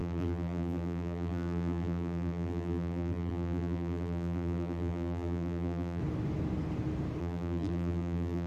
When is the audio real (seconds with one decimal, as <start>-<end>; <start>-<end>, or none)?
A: 6.0-7.2